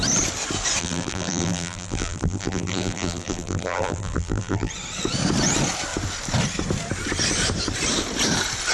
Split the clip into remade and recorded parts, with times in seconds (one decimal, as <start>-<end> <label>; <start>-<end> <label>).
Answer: 0.0-0.8 recorded; 0.8-4.7 remade; 4.7-8.7 recorded